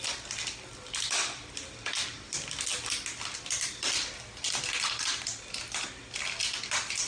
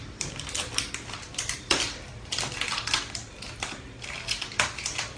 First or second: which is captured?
first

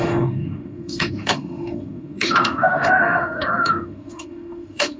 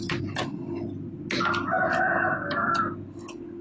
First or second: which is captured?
second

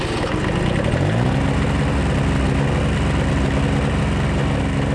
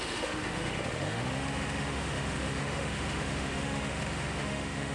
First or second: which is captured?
first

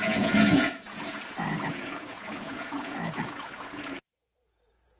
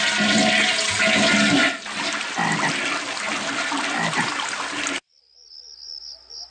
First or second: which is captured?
second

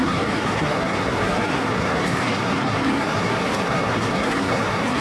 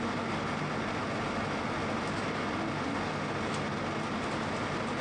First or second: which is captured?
second